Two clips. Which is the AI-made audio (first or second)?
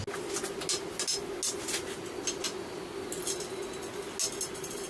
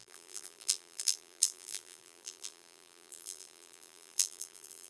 second